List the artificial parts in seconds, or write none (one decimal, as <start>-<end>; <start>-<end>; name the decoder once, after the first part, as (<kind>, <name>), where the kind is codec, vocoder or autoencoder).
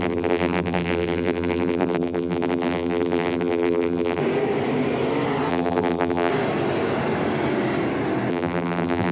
0.0-4.2 (vocoder, BigVGAN v2); 5.5-6.3; 8.3-9.1